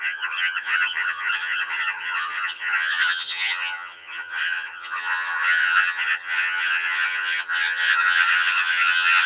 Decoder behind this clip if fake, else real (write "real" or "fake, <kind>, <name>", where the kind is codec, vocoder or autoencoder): fake, vocoder, HiFi-GAN